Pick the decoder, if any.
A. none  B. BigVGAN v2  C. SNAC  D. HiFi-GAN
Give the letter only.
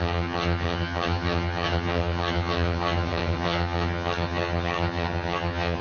D